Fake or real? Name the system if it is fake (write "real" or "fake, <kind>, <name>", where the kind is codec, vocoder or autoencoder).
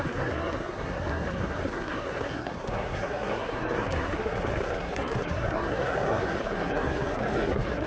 fake, codec, SNAC